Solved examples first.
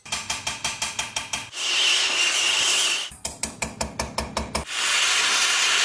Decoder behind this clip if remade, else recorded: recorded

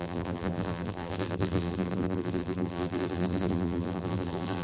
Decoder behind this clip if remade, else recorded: remade, vocoder, BigVGAN v2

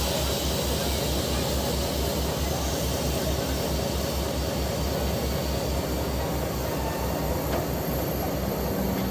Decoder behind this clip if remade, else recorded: recorded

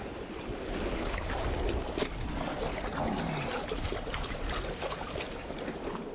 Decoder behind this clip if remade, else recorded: recorded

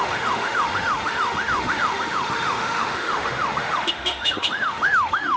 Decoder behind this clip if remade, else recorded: remade, autoencoder, DAC-VAE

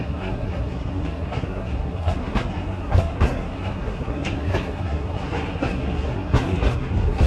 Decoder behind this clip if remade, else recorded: remade, codec, SNAC